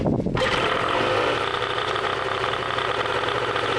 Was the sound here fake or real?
fake